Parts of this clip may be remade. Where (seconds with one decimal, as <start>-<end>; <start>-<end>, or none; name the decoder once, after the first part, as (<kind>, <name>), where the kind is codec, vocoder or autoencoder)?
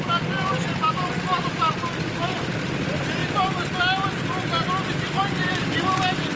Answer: none